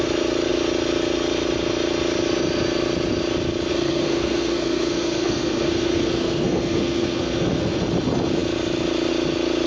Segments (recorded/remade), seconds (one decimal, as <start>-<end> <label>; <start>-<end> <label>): 0.0-3.7 recorded; 3.7-7.8 remade; 7.8-9.7 recorded